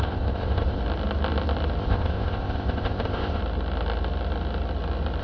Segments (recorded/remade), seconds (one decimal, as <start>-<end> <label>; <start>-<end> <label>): 0.0-0.8 remade; 0.8-1.8 recorded; 1.8-3.4 remade; 3.4-5.2 recorded